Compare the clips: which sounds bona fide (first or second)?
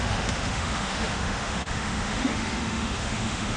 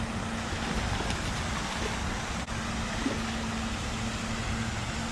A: second